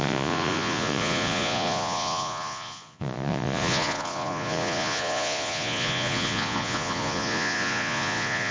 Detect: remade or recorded remade